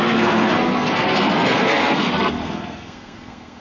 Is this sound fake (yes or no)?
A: yes